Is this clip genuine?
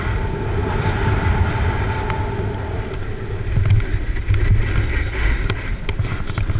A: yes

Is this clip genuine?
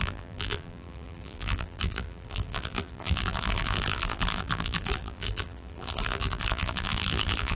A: no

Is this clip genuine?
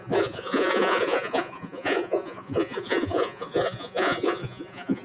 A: no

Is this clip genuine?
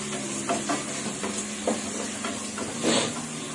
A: yes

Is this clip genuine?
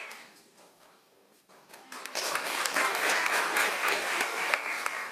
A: no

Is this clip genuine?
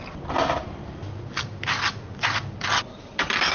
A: yes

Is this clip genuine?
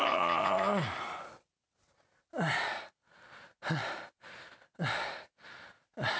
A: yes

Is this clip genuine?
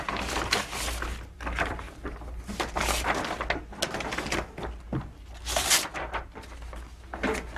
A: yes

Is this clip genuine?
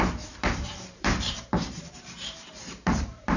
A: no